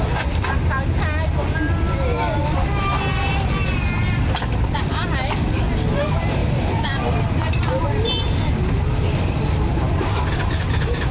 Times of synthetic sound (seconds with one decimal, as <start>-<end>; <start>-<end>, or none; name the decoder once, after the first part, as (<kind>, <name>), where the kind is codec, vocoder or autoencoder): 6.4-7.6 (vocoder, BigVGAN v2)